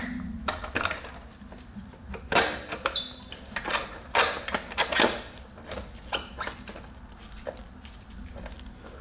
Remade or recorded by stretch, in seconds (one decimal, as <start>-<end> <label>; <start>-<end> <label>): 0.0-0.4 recorded; 0.4-0.9 remade; 0.9-9.0 recorded